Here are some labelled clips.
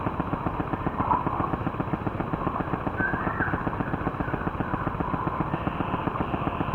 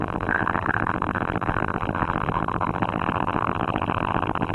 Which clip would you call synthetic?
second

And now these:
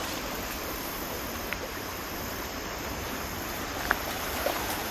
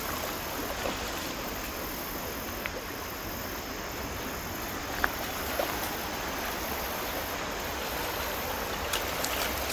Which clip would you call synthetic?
first